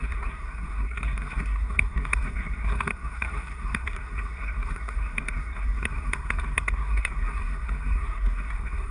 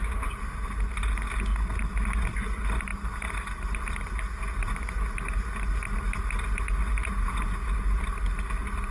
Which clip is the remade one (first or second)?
first